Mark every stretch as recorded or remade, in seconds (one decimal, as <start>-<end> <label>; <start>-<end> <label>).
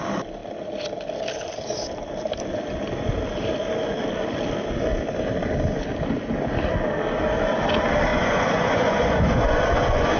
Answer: 0.0-8.1 recorded; 8.1-10.2 remade